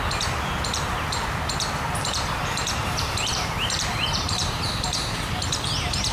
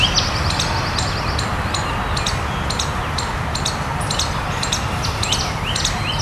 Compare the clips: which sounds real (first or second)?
second